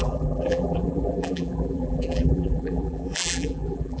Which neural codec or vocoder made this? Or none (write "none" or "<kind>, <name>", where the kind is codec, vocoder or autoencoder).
vocoder, BigVGAN v2